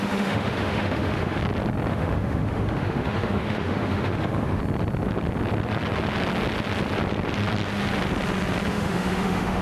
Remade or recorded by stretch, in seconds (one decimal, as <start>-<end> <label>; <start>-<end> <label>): 0.0-1.4 remade; 1.4-1.9 recorded; 1.9-4.6 remade; 4.6-8.7 recorded; 8.7-9.6 remade